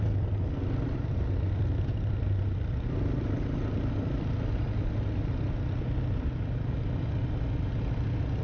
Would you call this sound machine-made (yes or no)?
no